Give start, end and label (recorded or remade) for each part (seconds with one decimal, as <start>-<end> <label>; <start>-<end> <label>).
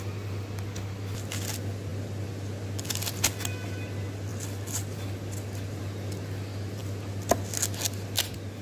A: 0.0-8.6 recorded